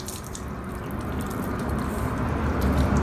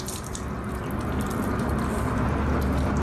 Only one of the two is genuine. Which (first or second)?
second